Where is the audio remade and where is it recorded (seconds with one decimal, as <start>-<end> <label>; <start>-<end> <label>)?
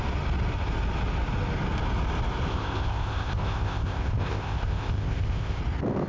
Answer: 0.0-2.5 recorded; 2.5-5.6 remade; 5.6-6.1 recorded